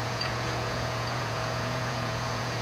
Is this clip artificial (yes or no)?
yes